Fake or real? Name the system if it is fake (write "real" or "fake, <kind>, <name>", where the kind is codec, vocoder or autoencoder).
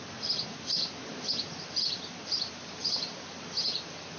fake, vocoder, BigVGAN v2